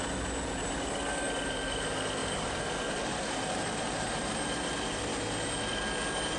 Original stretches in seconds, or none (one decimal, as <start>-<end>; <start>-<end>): 0.0-2.2; 5.0-6.4